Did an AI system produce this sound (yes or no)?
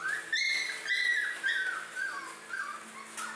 no